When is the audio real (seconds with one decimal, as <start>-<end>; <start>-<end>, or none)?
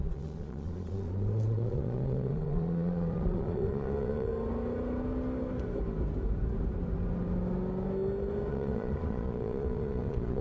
4.3-8.5